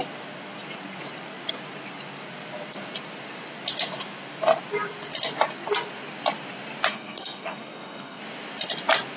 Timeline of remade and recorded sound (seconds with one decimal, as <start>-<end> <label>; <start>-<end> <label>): 0.0-6.9 recorded; 6.9-8.2 remade; 8.2-9.2 recorded